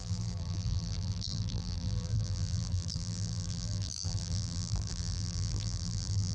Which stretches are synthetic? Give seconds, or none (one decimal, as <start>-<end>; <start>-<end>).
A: 0.0-6.3